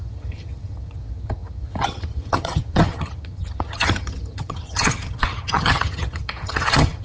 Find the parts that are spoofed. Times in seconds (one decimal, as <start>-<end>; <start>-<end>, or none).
0.0-7.0